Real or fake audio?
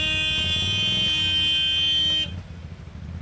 real